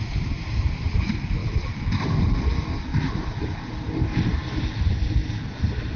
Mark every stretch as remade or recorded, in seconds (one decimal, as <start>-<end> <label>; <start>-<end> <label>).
0.0-1.4 recorded; 1.4-2.1 remade; 2.1-2.9 recorded; 2.9-6.0 remade